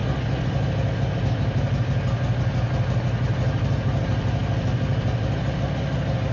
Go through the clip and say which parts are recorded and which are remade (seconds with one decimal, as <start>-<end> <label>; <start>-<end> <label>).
0.0-6.3 recorded